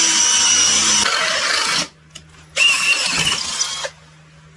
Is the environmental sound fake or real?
real